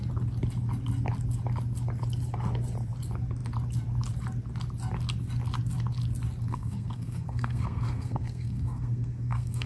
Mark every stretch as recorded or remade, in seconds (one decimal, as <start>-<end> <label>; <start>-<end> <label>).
0.0-6.5 recorded; 6.5-9.7 remade